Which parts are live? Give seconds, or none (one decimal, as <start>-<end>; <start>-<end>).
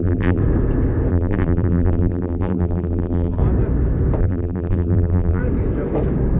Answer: 0.4-1.1; 3.4-4.2; 5.4-6.4